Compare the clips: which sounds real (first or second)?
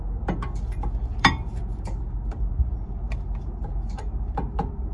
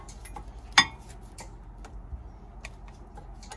second